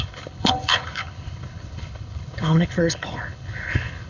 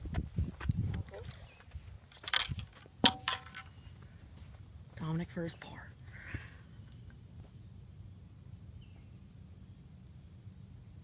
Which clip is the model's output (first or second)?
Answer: first